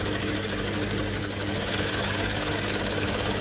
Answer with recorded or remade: remade